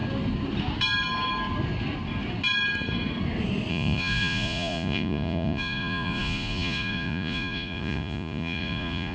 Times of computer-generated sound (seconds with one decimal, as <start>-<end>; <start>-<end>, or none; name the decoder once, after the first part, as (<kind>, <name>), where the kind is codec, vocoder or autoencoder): 3.7-9.1 (vocoder, Vocos)